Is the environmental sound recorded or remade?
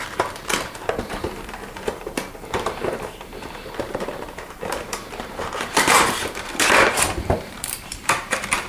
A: remade